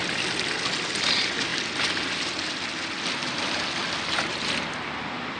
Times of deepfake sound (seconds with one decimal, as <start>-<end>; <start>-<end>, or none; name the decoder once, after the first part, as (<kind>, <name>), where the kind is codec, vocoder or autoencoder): none